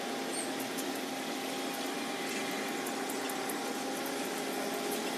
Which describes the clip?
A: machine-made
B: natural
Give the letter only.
B